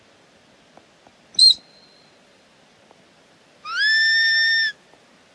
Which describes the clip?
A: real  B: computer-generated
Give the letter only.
A